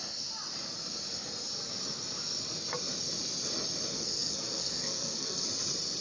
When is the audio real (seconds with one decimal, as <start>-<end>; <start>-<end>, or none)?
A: 0.0-3.9; 5.5-6.0